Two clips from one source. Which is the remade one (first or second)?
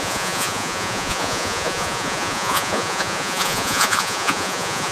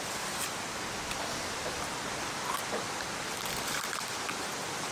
first